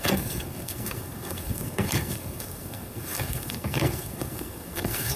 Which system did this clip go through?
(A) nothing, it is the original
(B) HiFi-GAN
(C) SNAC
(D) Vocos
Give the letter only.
C